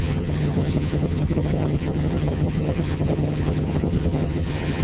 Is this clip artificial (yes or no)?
yes